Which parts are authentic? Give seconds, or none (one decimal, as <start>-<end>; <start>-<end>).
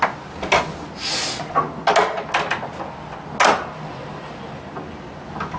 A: 0.0-5.6